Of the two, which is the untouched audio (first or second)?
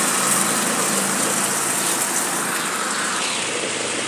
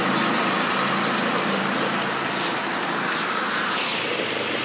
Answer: first